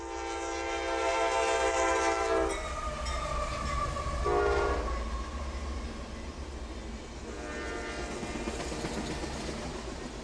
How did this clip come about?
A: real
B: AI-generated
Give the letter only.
A